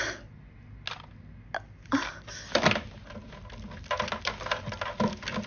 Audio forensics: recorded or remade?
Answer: recorded